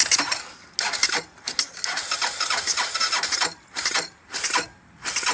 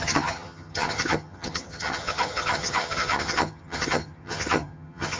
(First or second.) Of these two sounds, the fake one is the second